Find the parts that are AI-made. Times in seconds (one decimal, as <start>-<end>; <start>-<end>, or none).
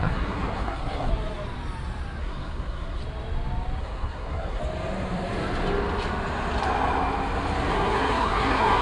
0.0-1.1; 2.2-3.0; 3.8-4.6; 7.7-8.8